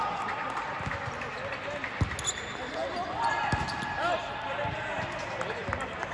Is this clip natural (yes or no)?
yes